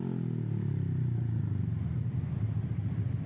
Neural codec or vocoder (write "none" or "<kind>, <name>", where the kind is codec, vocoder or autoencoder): none